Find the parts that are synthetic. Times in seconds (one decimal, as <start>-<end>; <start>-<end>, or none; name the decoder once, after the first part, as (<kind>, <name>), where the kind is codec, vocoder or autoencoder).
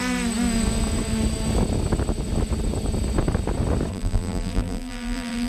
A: 3.9-5.5 (vocoder, BigVGAN v2)